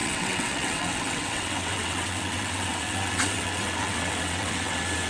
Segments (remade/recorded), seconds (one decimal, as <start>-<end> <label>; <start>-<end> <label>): 0.0-5.1 remade